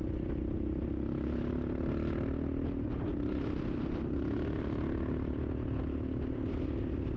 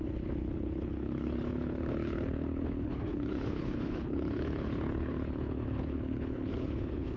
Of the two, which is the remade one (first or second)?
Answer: second